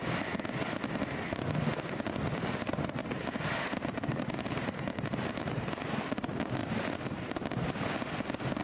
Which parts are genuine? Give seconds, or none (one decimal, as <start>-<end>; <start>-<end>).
0.0-2.6; 5.7-6.6; 7.3-8.6

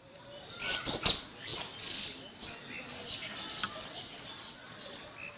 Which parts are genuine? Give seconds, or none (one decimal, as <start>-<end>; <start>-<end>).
0.0-5.4

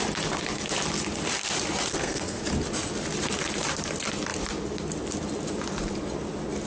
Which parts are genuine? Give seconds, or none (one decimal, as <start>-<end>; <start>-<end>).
0.0-1.9; 2.4-6.7

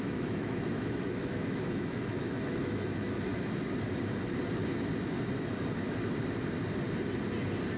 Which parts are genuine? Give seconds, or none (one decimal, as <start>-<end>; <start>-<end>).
3.3-7.8

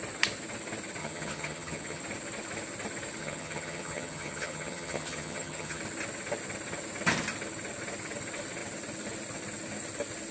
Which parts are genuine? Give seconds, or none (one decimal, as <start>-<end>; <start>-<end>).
0.0-1.0; 2.0-3.2; 5.8-10.3

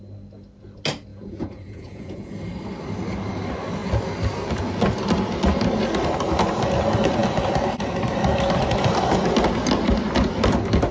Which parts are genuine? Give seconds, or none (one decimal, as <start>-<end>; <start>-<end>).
0.0-1.1; 2.3-10.9